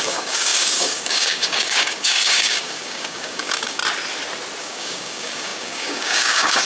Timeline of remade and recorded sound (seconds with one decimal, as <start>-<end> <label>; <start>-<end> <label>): 0.0-3.8 remade; 3.8-4.6 recorded; 4.6-6.6 remade